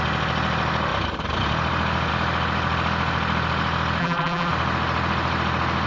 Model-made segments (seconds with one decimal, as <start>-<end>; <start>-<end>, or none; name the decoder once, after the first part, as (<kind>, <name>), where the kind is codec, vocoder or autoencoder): 4.0-4.5 (vocoder, BigVGAN v2)